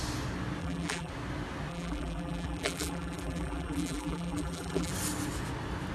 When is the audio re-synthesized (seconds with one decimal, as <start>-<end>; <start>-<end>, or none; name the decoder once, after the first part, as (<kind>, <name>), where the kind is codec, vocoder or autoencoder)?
0.6-1.1 (vocoder, BigVGAN v2); 1.7-4.9